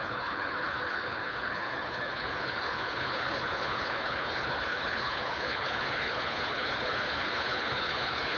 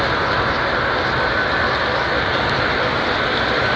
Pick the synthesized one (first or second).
first